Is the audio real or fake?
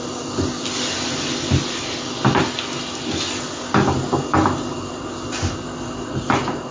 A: real